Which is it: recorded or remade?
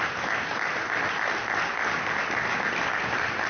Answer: recorded